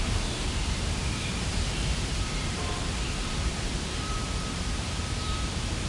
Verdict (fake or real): fake